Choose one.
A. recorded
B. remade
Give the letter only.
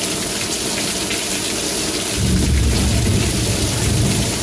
A